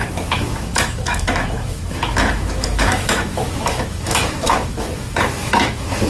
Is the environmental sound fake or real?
fake